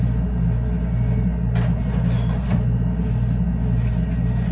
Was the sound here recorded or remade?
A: recorded